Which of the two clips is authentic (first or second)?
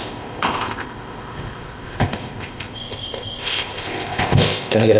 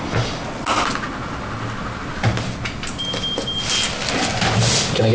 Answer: second